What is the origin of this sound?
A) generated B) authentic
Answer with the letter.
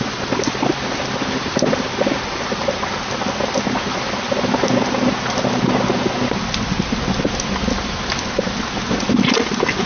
B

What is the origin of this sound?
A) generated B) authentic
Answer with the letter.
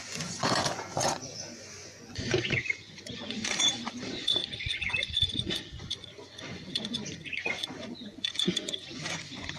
A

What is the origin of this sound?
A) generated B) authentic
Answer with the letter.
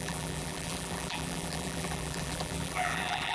A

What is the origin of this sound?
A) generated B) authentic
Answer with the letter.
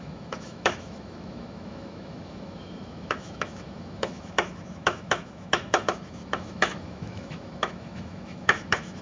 A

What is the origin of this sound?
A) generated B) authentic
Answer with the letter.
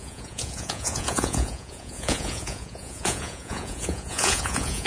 A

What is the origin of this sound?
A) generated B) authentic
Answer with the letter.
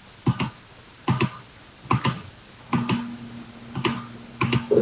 B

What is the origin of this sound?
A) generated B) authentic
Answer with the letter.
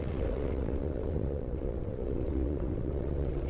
A